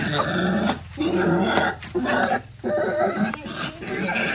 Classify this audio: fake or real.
real